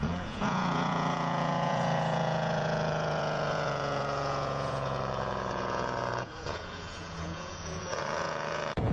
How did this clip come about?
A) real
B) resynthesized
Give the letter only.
B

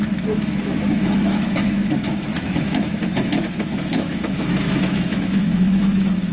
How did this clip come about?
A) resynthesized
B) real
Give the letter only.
A